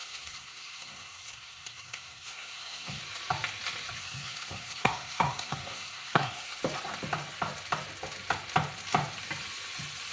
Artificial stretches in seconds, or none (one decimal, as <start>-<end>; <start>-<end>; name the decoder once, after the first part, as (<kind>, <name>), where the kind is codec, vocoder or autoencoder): 0.0-3.0 (codec, SNAC); 4.0-6.6